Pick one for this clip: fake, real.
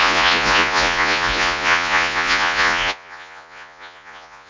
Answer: fake